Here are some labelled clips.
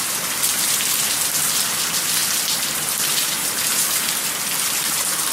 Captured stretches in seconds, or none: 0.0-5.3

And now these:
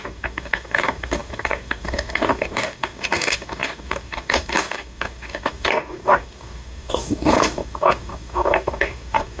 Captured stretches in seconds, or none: none

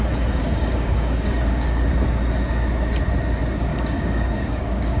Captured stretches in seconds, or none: 0.0-0.4; 1.9-3.7

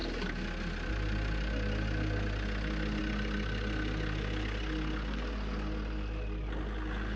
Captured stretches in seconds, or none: 0.0-7.2